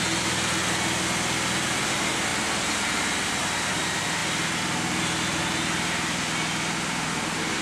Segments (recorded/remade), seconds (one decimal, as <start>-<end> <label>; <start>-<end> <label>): 0.0-7.6 recorded